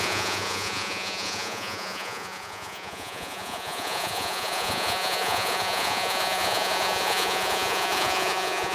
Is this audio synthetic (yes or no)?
yes